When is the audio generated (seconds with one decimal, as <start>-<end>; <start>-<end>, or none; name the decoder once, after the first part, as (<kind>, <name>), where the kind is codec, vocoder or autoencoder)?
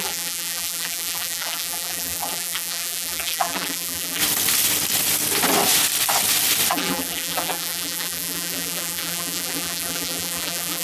0.0-4.2 (vocoder, BigVGAN v2); 6.7-10.8